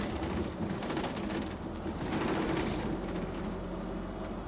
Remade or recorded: recorded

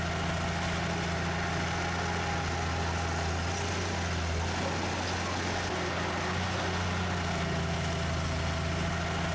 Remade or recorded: recorded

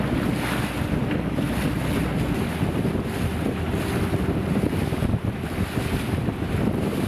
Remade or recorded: recorded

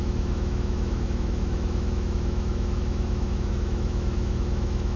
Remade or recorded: remade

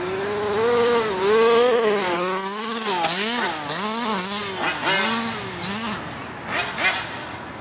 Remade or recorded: recorded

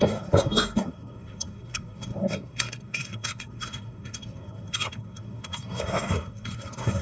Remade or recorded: remade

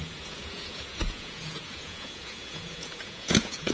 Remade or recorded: remade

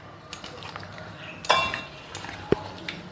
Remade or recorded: recorded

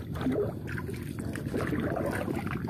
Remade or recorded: recorded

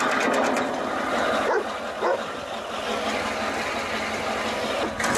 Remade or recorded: recorded